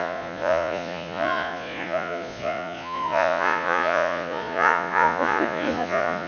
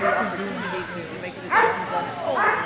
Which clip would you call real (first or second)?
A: second